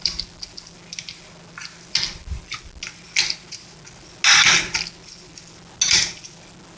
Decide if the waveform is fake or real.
real